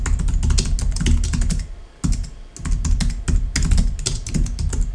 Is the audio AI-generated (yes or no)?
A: no